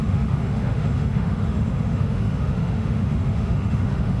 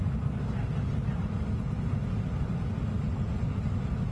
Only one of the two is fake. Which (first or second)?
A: first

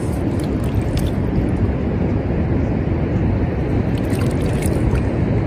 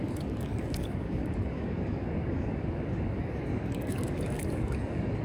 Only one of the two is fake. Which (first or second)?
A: second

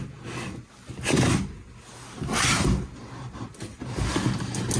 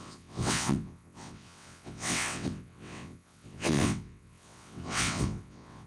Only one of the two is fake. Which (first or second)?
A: second